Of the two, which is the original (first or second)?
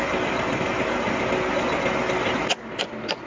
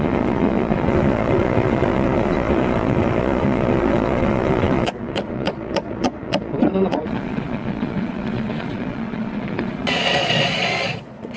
first